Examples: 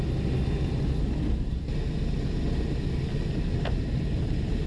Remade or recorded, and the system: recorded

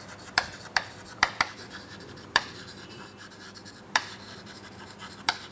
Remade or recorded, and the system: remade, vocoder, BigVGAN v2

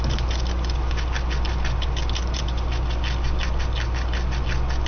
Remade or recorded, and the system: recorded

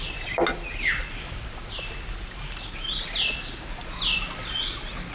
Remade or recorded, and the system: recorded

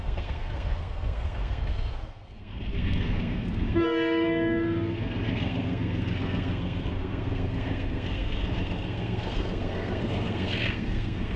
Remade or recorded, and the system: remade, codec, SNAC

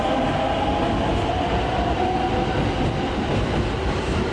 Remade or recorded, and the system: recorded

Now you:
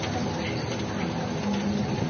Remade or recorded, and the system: recorded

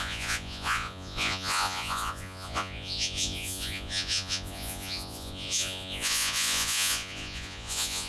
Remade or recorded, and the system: remade, vocoder, Vocos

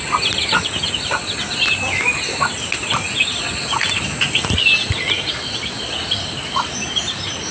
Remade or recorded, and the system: recorded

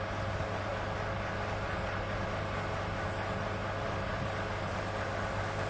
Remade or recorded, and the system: recorded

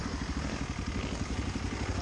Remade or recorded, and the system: recorded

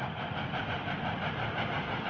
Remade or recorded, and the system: recorded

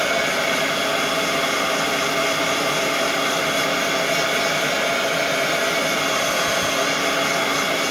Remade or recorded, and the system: recorded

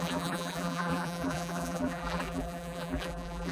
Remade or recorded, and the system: remade, vocoder, BigVGAN v2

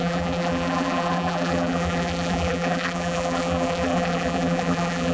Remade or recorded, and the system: remade, vocoder, BigVGAN v2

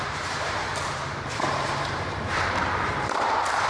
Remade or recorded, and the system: remade, vocoder, BigVGAN v2